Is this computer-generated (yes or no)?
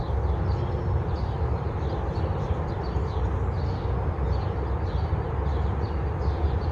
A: no